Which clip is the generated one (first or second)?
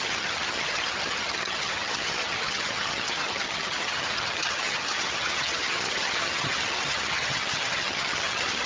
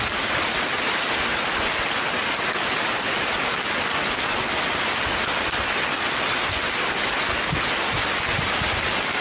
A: first